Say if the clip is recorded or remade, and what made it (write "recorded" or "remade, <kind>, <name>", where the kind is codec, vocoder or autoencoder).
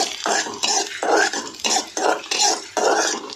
recorded